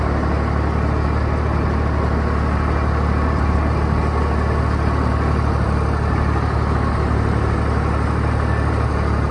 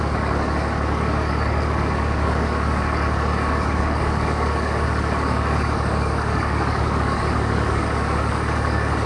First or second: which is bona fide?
first